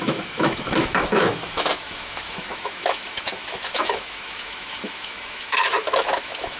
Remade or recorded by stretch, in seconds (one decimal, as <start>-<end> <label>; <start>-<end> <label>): 0.0-6.6 remade